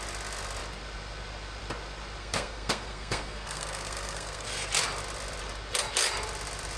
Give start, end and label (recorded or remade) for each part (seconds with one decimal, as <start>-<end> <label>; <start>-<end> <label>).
0.0-2.2 recorded; 2.2-4.7 remade; 4.7-6.8 recorded